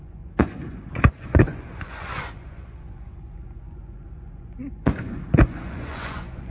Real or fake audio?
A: fake